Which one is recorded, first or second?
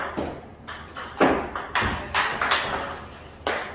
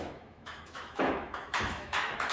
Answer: first